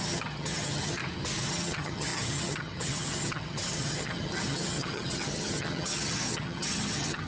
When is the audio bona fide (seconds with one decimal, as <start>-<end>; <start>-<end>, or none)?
1.0-1.5